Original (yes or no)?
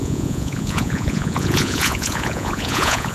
no